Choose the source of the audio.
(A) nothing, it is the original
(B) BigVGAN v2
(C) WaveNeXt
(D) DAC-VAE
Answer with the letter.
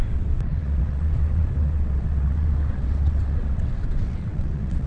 C